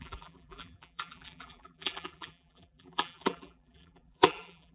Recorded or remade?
remade